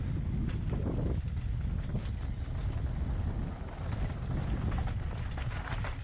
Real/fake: real